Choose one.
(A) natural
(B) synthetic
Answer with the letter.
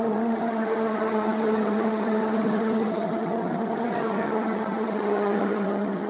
B